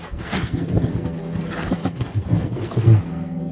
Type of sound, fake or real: fake